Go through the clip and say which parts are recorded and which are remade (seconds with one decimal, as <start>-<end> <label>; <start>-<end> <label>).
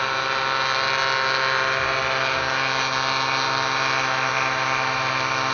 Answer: 0.0-5.5 recorded